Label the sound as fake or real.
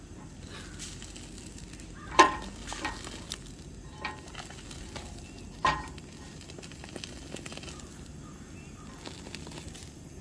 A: real